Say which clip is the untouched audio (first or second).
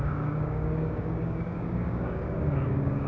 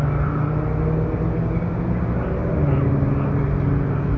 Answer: second